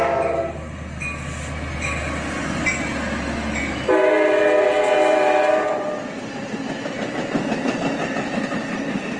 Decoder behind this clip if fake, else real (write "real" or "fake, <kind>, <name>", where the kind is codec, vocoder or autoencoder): real